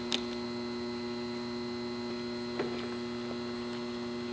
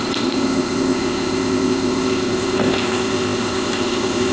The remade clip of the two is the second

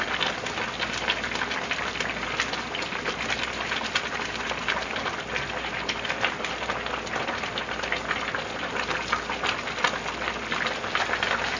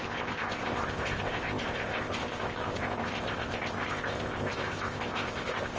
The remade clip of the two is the second